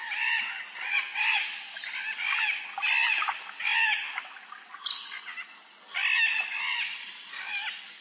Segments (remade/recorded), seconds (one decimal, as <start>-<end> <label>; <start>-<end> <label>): 0.0-8.0 recorded